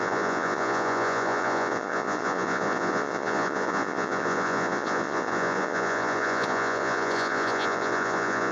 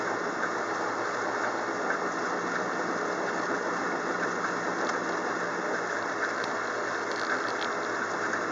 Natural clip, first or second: second